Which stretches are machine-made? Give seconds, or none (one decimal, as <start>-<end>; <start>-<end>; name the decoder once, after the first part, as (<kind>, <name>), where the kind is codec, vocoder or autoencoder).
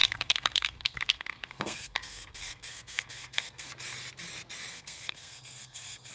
0.0-3.7 (codec, SNAC); 4.7-6.1